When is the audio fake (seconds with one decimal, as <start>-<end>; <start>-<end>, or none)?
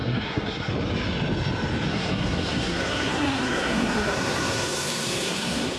0.0-0.7; 1.9-5.8